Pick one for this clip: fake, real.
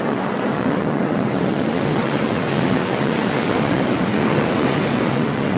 fake